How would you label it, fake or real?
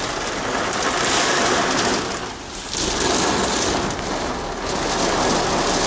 real